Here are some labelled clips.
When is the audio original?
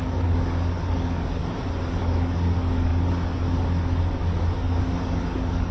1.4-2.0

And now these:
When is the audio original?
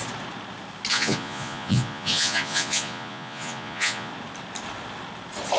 0.0-0.9; 4.1-5.6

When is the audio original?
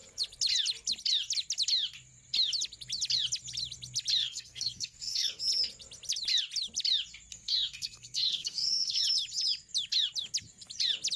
0.0-4.2; 5.4-7.3; 9.0-11.2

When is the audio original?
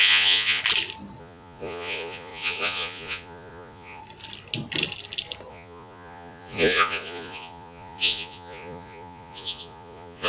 0.6-1.2; 4.0-5.5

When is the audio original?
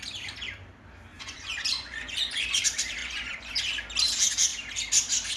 0.0-1.1; 2.6-3.0; 3.5-5.4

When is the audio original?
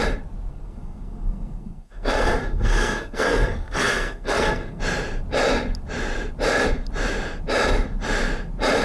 0.0-0.5; 4.8-8.8